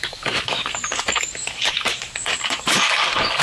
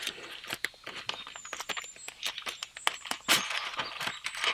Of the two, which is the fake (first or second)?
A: first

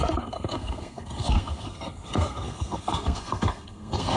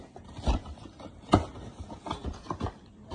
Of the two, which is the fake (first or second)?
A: first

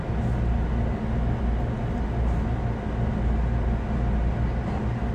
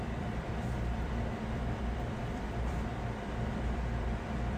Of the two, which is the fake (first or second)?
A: second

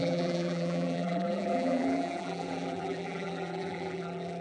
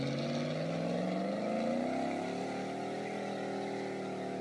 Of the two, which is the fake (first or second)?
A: first